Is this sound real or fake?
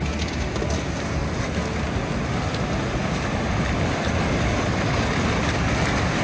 real